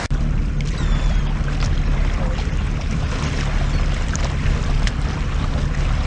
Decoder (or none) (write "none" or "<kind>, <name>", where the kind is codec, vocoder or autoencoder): vocoder, BigVGAN v2